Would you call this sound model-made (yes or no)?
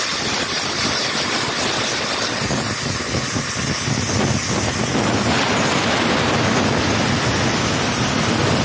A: no